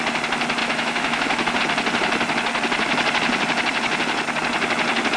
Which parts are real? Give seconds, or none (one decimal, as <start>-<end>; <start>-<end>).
0.0-0.6; 1.6-5.2